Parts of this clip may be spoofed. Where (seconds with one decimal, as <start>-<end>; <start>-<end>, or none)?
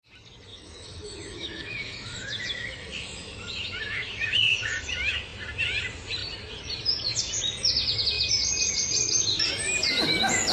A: 0.5-5.2